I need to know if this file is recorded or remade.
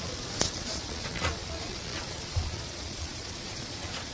remade